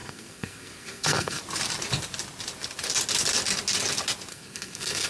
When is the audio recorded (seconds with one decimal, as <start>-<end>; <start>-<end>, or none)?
1.4-4.3